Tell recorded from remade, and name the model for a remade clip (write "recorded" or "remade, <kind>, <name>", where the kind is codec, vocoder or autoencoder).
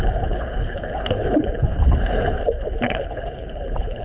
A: remade, codec, HILCodec